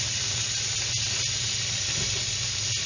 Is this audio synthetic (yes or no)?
no